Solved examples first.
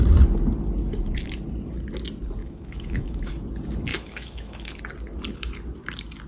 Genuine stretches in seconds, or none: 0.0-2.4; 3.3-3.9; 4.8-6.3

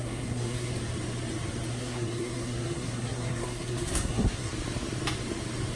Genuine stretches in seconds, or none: 0.7-1.7; 4.5-5.8

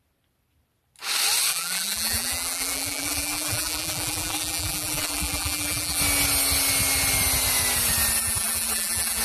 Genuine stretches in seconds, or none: 0.0-1.5; 6.0-8.2

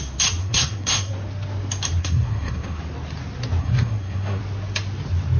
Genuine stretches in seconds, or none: 0.0-0.4; 1.1-2.0; 2.8-3.6; 4.4-5.4

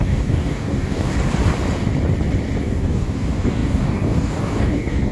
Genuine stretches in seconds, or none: 1.1-2.6